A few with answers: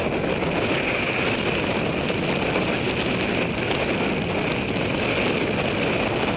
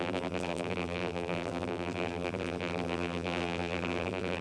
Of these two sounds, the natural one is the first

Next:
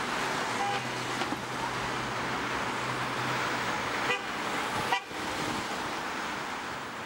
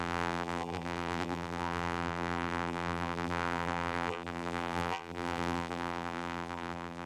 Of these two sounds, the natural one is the first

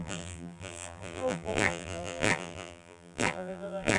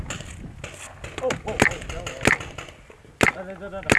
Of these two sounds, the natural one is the second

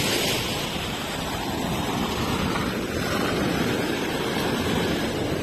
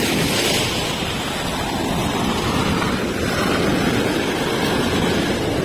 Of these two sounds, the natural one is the second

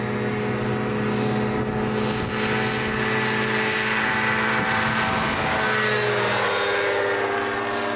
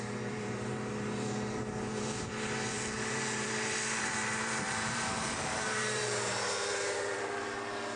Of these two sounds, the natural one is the first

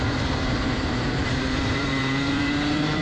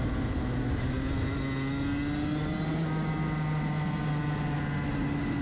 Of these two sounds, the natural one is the second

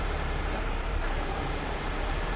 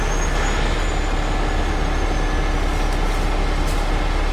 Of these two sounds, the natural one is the second